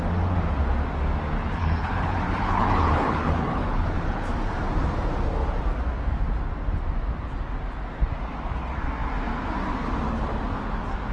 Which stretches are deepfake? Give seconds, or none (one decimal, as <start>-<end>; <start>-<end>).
1.6-4.3